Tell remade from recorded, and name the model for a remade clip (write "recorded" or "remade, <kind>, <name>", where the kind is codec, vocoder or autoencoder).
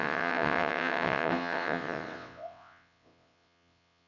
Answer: remade, vocoder, WaveNeXt